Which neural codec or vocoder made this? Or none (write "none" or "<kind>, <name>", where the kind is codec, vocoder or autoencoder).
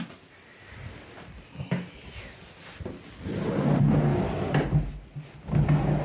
none